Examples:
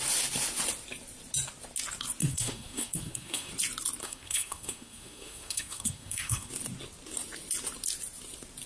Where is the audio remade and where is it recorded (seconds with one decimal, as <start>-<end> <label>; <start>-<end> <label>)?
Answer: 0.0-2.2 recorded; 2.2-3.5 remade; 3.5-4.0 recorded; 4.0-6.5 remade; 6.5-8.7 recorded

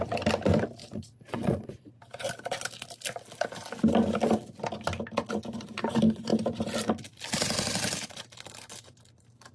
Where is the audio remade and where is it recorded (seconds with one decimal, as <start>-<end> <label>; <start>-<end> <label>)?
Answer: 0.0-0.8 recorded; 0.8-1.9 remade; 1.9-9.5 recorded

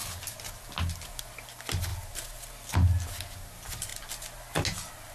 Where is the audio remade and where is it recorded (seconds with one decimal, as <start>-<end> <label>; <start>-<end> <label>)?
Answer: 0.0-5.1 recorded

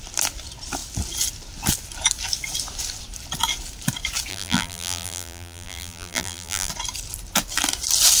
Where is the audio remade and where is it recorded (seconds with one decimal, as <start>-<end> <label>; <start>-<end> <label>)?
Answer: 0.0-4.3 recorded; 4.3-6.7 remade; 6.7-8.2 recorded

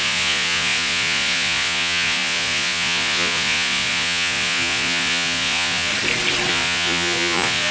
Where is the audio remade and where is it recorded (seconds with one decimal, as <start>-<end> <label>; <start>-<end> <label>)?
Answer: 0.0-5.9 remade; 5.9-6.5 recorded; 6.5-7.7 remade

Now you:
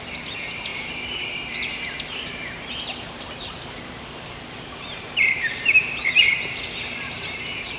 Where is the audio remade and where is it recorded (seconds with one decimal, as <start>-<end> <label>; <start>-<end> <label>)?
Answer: 0.0-7.8 remade

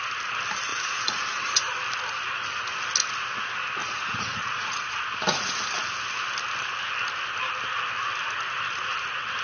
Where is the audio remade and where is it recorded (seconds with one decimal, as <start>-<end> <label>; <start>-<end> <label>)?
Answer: 0.0-0.7 recorded; 0.7-1.5 remade; 1.5-3.8 recorded; 3.8-5.7 remade; 5.7-9.4 recorded